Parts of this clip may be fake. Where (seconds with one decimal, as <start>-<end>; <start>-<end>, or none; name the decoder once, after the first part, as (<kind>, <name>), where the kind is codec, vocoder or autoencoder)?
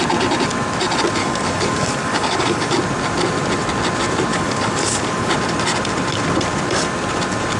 1.2-2.7 (codec, DAC); 4.3-5.3